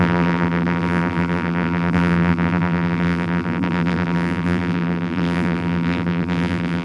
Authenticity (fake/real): fake